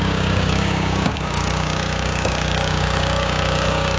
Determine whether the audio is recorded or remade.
remade